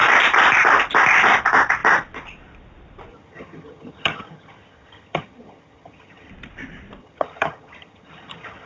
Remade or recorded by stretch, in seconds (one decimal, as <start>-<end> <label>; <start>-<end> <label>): 0.0-3.1 recorded; 3.1-6.3 remade; 6.3-7.0 recorded; 7.0-8.7 remade